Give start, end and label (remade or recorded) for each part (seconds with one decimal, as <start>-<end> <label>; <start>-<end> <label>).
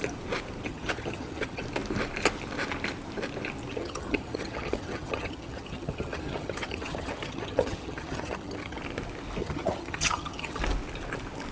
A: 0.0-0.7 recorded; 0.7-1.6 remade; 1.6-3.8 recorded; 3.8-8.8 remade; 8.8-9.4 recorded; 9.4-10.6 remade; 10.6-11.5 recorded